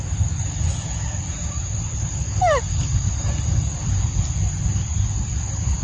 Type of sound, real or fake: real